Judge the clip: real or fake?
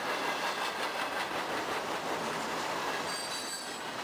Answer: real